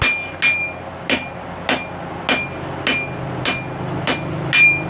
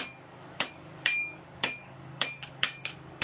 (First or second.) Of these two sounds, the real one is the first